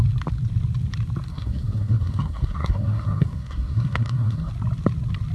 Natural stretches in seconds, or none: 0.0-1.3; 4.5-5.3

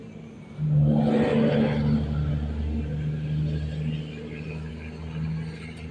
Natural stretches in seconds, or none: 0.0-5.9